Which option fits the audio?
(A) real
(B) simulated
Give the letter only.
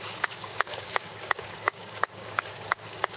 B